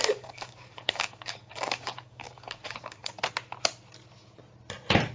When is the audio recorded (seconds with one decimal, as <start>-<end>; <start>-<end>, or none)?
3.1-5.1